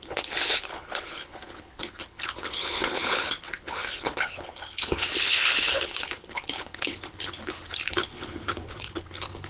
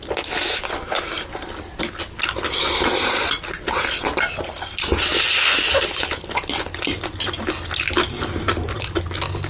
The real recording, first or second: second